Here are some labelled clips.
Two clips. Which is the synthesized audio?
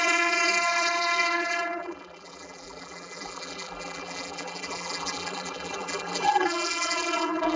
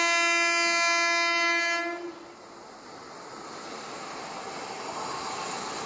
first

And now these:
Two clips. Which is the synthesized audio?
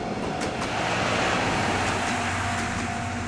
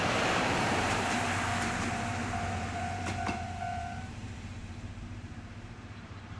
second